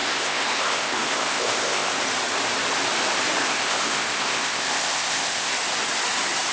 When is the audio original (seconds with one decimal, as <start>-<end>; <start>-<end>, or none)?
1.9-3.4; 5.5-6.5